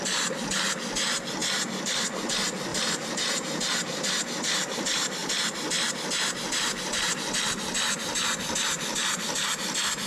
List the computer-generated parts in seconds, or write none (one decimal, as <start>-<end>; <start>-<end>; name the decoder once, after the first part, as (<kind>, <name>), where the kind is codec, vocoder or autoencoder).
2.7-4.1 (vocoder, BigVGAN v2)